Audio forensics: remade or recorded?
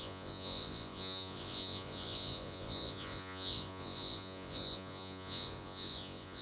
remade